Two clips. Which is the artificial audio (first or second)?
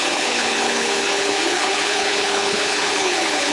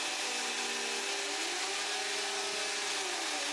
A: first